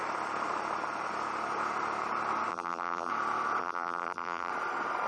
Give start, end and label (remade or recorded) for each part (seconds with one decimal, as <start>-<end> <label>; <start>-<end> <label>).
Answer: 0.0-2.5 recorded; 2.5-3.1 remade; 3.1-3.6 recorded; 3.6-4.5 remade; 4.5-5.1 recorded

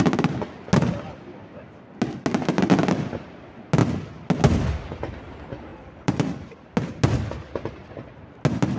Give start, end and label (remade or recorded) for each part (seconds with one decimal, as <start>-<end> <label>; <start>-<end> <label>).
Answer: 0.0-5.7 recorded; 5.7-6.6 remade; 6.6-8.8 recorded

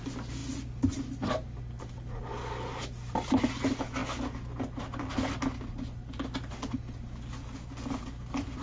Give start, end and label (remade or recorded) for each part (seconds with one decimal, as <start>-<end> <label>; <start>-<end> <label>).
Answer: 0.0-0.4 recorded; 0.4-1.6 remade; 1.6-8.6 recorded

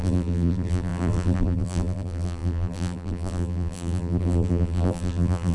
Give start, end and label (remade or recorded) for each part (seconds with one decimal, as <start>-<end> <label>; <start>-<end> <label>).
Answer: 0.0-5.5 remade

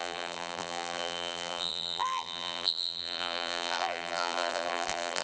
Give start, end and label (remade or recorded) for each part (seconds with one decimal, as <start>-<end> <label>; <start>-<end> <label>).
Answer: 0.0-5.2 remade

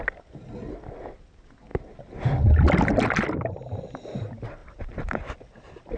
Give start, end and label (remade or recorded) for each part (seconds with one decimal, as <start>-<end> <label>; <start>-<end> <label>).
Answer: 0.0-4.6 recorded; 4.6-6.0 remade

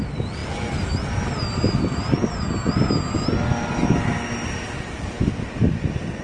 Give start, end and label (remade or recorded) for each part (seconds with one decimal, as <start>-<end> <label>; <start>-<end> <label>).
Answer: 0.0-6.2 recorded